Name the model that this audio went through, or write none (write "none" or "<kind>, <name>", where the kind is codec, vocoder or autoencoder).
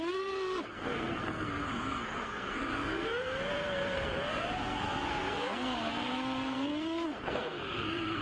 codec, SNAC